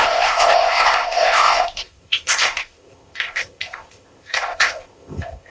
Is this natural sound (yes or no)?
no